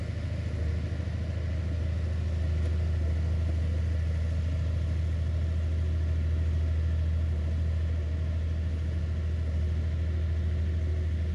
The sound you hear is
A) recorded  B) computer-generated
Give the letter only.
A